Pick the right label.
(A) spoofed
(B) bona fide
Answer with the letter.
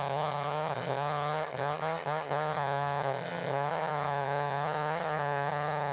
A